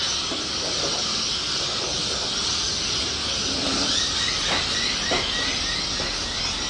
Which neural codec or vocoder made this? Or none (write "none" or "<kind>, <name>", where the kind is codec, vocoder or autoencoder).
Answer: none